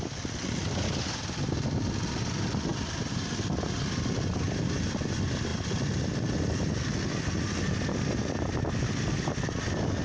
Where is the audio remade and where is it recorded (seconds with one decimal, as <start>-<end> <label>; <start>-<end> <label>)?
0.0-10.0 recorded